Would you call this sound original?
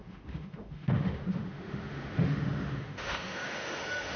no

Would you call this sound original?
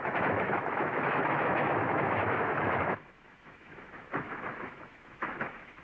no